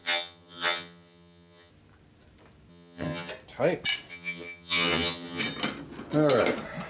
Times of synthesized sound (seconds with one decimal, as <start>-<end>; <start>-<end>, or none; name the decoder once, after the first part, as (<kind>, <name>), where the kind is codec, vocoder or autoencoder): 0.0-1.7 (vocoder, HiFi-GAN); 2.7-3.3; 4.1-5.4